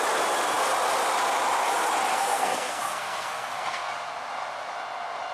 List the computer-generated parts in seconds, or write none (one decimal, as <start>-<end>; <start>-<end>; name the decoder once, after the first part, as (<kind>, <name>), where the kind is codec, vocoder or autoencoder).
2.1-3.9 (codec, SNAC)